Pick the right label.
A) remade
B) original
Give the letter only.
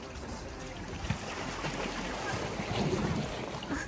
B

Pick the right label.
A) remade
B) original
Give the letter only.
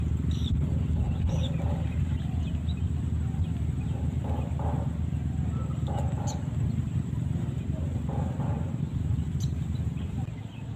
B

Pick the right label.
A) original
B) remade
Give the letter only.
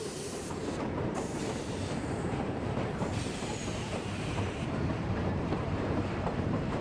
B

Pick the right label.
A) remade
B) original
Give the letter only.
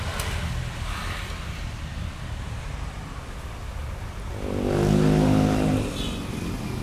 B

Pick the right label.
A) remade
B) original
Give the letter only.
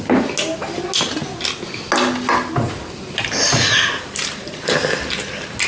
B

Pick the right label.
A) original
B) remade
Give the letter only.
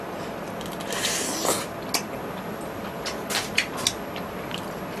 A